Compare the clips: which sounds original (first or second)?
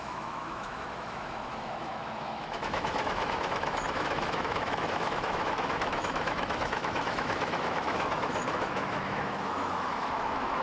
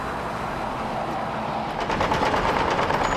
second